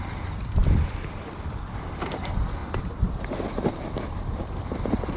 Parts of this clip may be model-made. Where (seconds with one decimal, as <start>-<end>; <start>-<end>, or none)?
0.0-2.6; 3.5-5.2